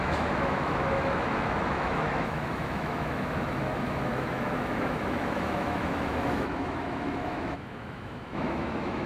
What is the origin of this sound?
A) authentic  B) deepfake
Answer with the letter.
B